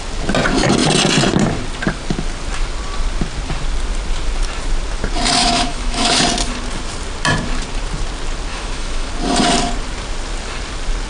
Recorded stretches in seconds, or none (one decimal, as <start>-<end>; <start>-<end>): 0.0-5.4; 6.2-8.5; 9.1-11.1